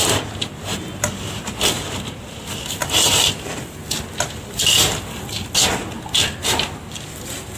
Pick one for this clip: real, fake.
real